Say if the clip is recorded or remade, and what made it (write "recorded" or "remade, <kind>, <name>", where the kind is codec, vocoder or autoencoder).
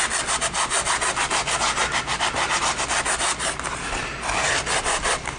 recorded